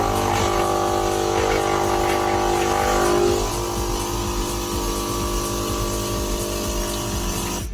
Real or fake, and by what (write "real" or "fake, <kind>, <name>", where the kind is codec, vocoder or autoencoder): real